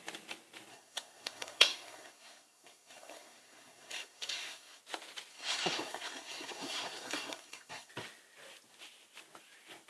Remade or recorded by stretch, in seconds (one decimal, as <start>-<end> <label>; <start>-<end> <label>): 0.0-0.7 recorded; 0.7-4.8 remade; 4.8-5.3 recorded; 5.3-7.9 remade; 7.9-9.9 recorded